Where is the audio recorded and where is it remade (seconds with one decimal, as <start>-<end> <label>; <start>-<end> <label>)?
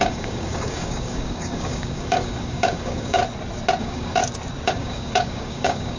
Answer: 0.0-3.2 remade; 3.2-3.8 recorded; 3.8-4.2 remade; 4.2-4.7 recorded; 4.7-6.0 remade